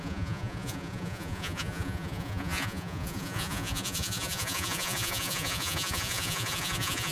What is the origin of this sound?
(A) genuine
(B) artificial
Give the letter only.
B